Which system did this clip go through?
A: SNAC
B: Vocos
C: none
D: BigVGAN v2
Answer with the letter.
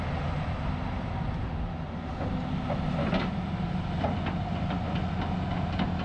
C